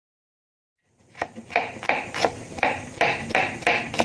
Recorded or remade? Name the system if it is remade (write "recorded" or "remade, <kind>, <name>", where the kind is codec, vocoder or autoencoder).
remade, vocoder, BigVGAN v2